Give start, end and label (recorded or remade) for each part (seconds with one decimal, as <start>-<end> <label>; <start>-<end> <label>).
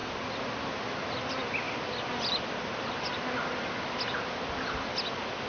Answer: 0.0-5.5 recorded